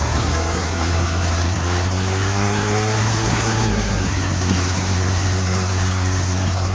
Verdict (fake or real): fake